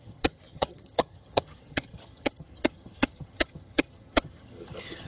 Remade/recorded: remade